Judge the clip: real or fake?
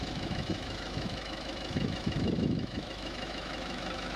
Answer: fake